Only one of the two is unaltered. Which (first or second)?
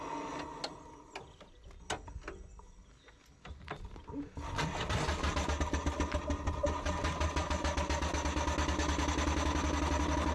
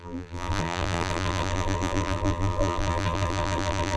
first